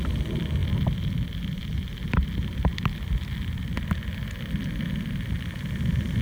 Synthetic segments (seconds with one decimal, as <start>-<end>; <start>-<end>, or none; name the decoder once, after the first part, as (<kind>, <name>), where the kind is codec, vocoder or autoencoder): none